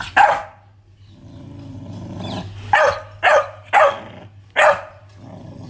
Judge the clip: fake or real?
real